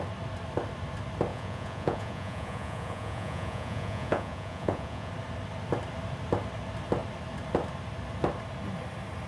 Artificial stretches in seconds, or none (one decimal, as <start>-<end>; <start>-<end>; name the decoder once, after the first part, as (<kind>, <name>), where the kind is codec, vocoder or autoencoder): 1.3-5.1 (vocoder, Vocos)